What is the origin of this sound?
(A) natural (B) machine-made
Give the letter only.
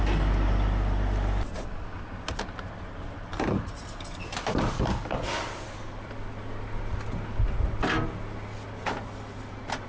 A